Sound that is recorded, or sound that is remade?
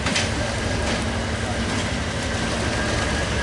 recorded